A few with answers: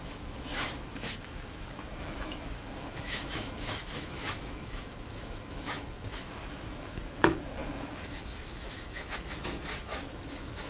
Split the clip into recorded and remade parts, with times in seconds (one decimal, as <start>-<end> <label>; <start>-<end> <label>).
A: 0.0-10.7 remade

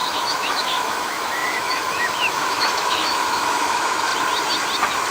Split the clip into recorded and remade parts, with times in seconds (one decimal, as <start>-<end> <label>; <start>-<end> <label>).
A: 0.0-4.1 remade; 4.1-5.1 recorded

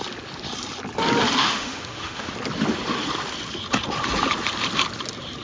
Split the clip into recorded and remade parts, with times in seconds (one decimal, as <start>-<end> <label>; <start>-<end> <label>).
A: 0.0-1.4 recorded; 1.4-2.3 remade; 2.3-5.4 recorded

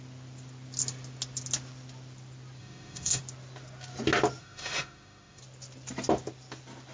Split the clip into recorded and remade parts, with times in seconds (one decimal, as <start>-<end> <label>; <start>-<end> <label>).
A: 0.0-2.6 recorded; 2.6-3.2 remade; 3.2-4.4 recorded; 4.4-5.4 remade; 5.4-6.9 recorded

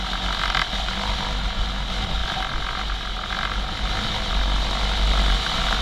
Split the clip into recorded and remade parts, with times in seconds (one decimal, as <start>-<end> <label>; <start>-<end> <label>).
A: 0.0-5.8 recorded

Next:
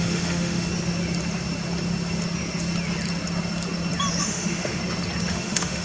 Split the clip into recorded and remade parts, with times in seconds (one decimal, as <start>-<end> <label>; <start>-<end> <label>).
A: 0.0-0.7 remade; 0.7-4.2 recorded; 4.2-4.8 remade; 4.8-5.3 recorded; 5.3-5.8 remade

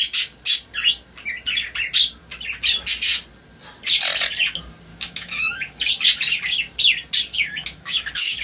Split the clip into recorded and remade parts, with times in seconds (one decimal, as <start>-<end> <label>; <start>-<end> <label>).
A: 0.0-4.9 recorded; 4.9-5.9 remade; 5.9-7.3 recorded; 7.3-8.4 remade

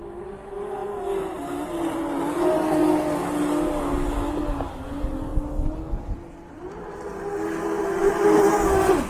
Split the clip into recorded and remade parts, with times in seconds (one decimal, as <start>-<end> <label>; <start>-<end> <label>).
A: 0.0-9.1 recorded